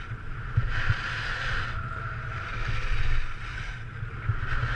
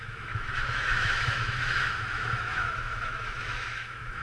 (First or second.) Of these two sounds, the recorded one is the first